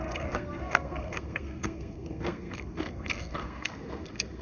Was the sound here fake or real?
fake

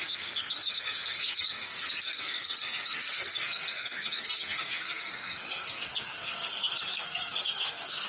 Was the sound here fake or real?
fake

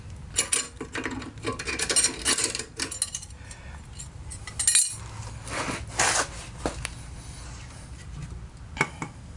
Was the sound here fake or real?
real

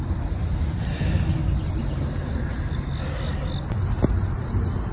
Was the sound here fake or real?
real